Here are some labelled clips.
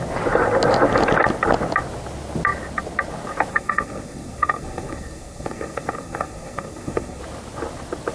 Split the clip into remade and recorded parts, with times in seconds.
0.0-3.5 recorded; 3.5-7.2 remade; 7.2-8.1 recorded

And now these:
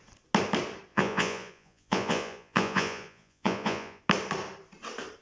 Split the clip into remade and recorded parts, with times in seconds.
0.0-0.9 recorded; 0.9-4.0 remade; 4.0-5.2 recorded